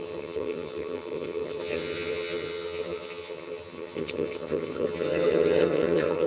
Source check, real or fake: fake